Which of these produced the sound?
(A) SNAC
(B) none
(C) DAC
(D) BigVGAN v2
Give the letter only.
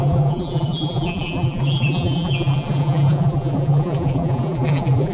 D